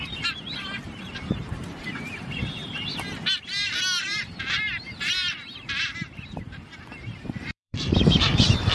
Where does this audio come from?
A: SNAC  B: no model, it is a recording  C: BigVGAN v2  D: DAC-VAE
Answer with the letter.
C